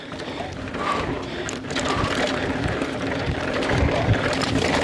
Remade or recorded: recorded